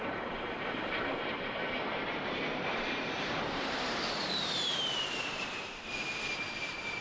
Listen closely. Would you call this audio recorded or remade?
remade